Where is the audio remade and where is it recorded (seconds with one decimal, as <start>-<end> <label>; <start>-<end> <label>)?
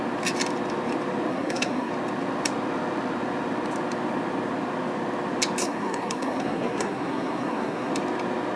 0.0-1.3 recorded; 1.3-1.9 remade; 1.9-5.6 recorded; 5.6-7.9 remade; 7.9-8.6 recorded